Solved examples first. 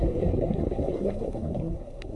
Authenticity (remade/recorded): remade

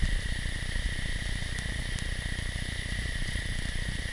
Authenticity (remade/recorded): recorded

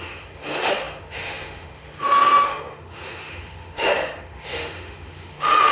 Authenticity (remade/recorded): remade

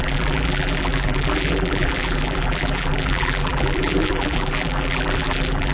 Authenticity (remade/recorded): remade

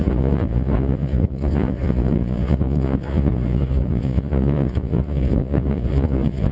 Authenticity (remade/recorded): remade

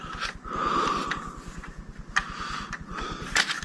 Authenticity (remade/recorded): recorded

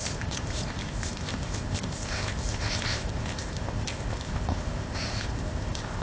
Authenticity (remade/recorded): remade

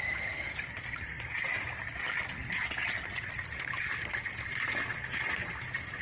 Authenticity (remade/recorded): recorded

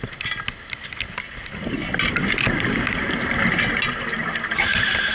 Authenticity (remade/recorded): recorded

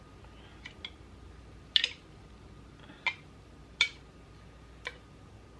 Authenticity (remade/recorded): recorded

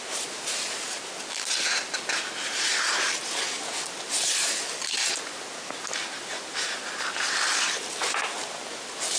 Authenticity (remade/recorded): recorded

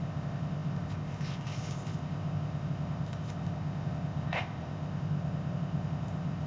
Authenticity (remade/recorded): remade